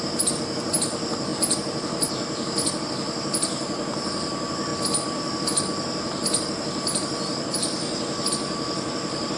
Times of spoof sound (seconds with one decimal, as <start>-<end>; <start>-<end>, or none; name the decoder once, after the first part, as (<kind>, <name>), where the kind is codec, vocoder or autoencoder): none